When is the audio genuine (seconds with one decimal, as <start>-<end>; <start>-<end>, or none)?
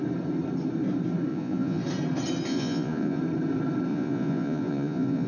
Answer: 0.0-1.3; 1.8-2.5; 3.2-3.9